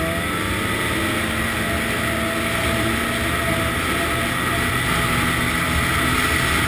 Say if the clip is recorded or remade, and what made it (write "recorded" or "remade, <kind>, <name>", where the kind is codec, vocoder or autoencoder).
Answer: recorded